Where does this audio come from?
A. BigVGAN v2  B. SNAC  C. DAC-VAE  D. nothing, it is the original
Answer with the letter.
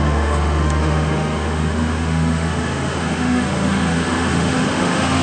C